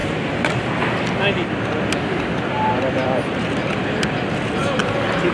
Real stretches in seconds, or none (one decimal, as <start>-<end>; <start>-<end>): 0.0-3.0; 4.8-5.3